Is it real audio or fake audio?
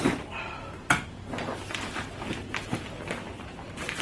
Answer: real